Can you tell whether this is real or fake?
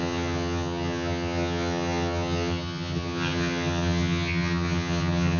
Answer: fake